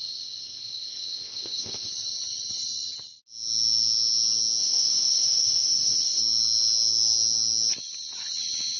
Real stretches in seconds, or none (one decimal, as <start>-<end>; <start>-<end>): 1.9-4.6; 6.2-8.8